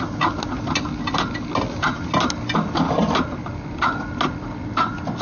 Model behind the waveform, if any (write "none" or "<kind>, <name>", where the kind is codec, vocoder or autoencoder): none